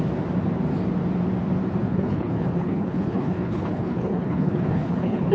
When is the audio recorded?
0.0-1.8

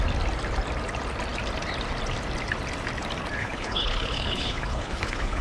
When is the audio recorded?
0.0-3.4

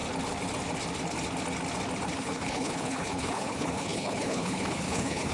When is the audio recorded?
0.0-2.2

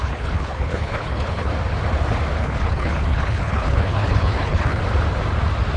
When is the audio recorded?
1.5-2.4; 4.8-5.8

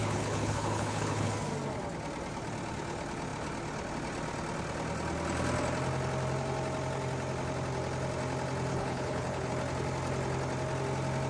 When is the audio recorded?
1.3-8.7; 9.5-11.3